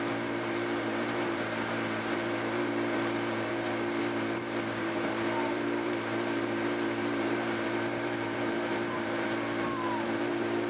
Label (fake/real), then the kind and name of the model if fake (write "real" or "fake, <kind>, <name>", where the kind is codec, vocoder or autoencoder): fake, vocoder, BigVGAN v2